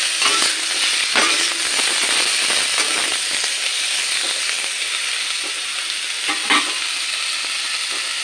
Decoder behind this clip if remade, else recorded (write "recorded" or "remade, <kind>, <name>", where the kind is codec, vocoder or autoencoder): recorded